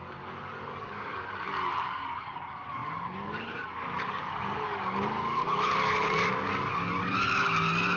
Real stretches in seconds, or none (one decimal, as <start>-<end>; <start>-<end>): none